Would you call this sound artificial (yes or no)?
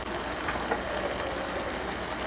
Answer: no